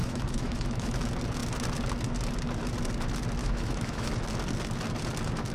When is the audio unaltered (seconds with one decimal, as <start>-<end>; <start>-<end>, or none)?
1.0-3.4; 4.1-5.5